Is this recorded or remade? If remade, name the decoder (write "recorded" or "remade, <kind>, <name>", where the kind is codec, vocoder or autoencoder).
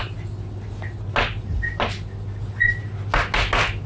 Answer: recorded